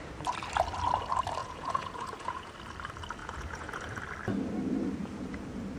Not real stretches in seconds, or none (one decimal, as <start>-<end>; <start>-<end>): 1.4-2.5; 3.2-4.0